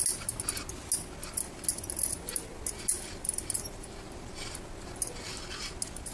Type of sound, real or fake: real